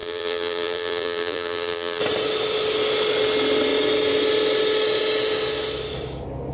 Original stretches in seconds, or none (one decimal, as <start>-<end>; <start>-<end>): 2.0-6.5